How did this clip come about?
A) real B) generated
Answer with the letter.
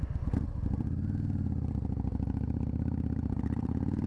B